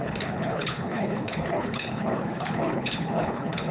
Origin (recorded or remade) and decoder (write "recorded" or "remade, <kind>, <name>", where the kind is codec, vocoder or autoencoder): remade, codec, HILCodec